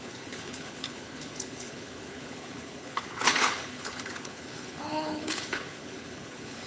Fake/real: fake